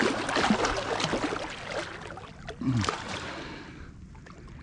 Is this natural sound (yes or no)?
yes